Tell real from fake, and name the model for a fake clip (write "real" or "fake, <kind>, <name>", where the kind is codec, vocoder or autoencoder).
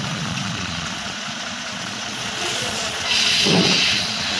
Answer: fake, vocoder, Vocos